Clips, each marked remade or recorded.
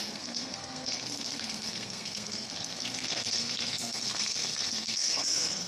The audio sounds remade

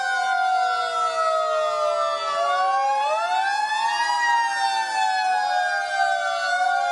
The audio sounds recorded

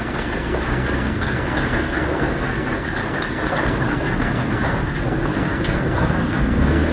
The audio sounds remade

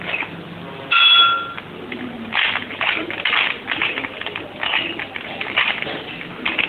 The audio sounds recorded